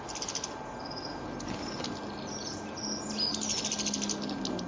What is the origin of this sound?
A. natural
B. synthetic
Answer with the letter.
A